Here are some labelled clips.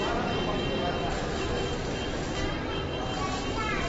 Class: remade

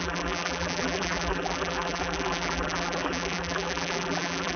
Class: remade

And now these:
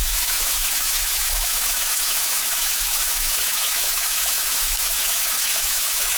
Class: remade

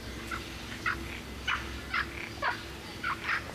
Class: recorded